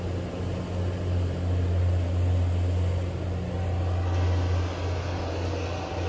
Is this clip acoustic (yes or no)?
yes